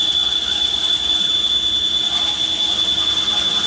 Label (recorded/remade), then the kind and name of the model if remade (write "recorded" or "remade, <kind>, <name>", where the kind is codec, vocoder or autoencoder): recorded